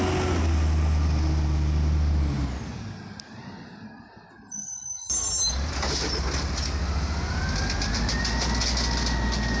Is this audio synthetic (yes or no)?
no